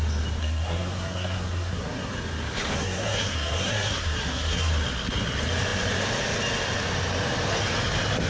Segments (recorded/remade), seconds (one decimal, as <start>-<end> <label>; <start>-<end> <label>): 0.0-0.4 recorded; 0.4-2.1 remade; 2.1-2.8 recorded; 2.8-4.7 remade; 4.7-8.3 recorded